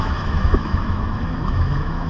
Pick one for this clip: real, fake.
fake